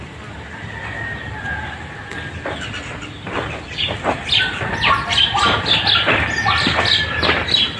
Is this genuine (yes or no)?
yes